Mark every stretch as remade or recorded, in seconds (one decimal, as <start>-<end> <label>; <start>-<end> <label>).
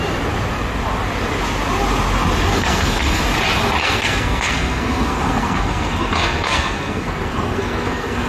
0.0-2.5 recorded; 2.5-3.2 remade; 3.2-3.8 recorded; 3.8-8.3 remade